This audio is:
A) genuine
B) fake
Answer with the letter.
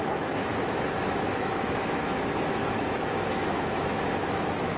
B